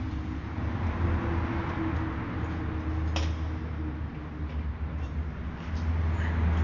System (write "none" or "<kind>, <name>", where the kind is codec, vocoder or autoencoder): none